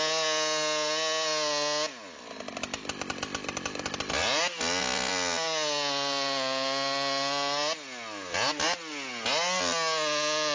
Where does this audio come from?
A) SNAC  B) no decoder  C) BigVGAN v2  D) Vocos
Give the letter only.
B